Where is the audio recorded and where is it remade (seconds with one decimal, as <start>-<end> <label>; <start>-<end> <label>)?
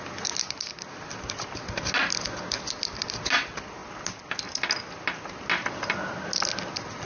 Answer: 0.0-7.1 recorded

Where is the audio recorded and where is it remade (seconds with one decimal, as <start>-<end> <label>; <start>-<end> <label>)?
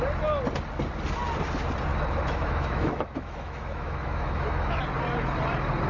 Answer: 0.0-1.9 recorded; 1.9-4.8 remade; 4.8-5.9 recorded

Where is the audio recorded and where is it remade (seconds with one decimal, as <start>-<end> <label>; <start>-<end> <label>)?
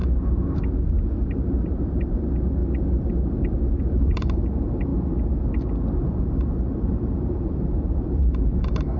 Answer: 0.0-1.3 recorded; 1.3-2.6 remade; 2.6-4.0 recorded; 4.0-4.9 remade; 4.9-6.7 recorded; 6.7-9.0 remade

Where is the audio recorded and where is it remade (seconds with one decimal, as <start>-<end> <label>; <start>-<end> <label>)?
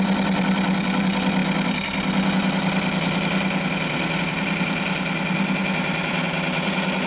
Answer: 0.0-7.1 remade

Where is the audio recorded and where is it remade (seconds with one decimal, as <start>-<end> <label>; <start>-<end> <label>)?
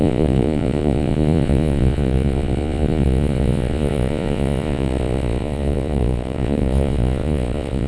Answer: 0.0-7.9 remade